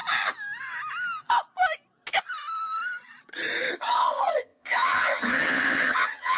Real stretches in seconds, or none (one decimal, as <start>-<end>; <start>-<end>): 0.0-3.7